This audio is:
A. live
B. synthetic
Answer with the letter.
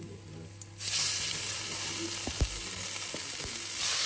A